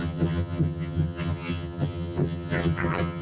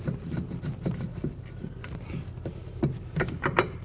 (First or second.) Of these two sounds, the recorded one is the second